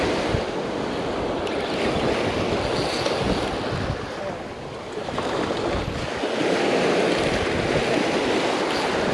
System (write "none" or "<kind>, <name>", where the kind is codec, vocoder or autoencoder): none